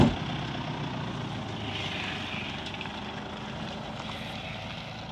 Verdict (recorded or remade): recorded